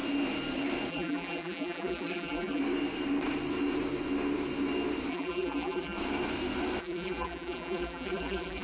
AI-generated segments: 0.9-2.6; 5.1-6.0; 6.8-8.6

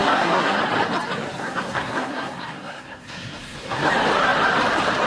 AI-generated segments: 0.0-0.6; 1.4-3.9

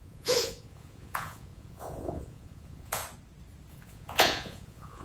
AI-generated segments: 0.0-3.0; 3.7-5.0